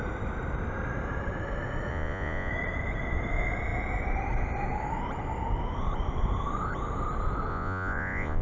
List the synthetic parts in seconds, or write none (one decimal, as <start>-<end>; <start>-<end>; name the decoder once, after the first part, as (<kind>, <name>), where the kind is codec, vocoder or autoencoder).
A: 1.9-2.5 (vocoder, Vocos); 7.5-8.4